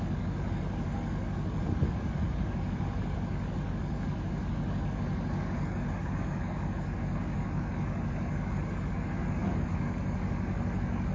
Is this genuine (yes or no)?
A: no